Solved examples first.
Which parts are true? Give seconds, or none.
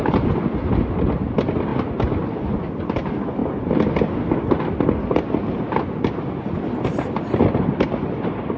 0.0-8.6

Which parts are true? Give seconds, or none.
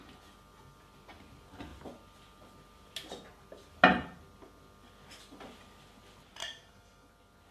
0.0-6.4; 7.1-7.5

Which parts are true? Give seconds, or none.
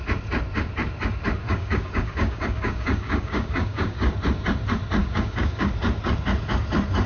0.0-1.4; 4.1-5.0; 5.7-7.1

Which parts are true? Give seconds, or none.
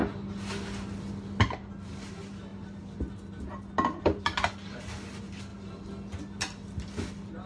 0.0-7.5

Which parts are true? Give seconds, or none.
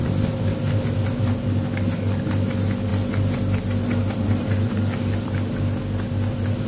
0.0-6.7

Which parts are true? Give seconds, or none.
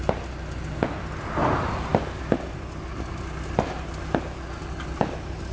0.0-5.5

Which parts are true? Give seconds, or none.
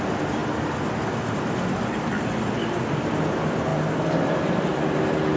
0.0-5.4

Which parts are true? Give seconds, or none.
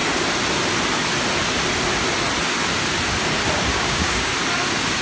0.0-3.7; 4.3-5.0